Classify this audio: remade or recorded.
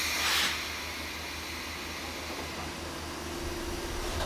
recorded